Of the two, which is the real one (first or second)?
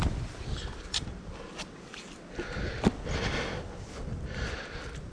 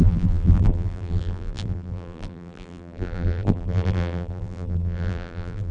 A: first